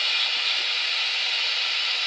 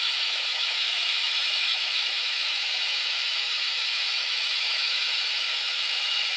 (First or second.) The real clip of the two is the first